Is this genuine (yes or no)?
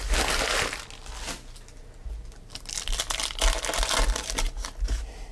yes